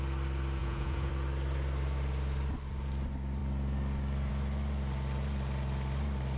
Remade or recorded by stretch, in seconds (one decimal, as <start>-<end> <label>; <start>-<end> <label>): 0.0-0.6 recorded; 0.6-1.1 remade; 1.1-6.4 recorded